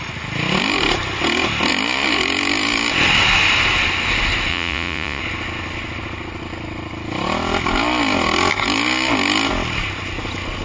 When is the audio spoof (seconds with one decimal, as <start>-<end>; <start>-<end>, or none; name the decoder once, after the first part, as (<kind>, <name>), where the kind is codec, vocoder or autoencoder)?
4.5-5.2 (vocoder, Vocos)